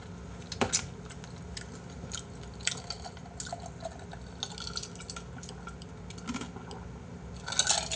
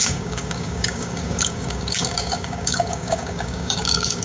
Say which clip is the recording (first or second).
first